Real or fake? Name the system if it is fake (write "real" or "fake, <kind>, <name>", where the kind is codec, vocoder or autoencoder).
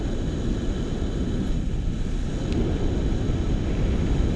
real